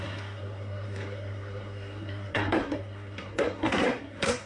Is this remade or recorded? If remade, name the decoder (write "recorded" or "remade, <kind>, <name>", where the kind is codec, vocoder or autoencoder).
remade, codec, SNAC